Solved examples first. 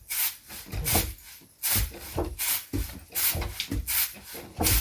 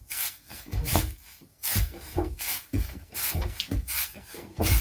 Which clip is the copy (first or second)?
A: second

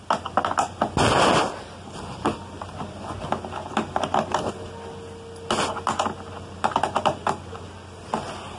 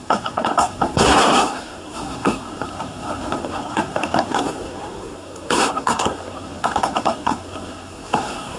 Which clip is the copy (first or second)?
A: second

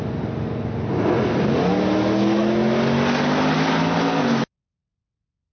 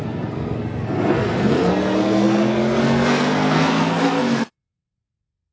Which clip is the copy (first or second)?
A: second